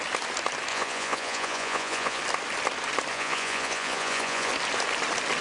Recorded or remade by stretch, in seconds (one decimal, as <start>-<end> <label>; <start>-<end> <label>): 0.0-0.7 recorded; 0.7-2.2 remade; 2.2-3.1 recorded; 3.1-4.5 remade; 4.5-5.4 recorded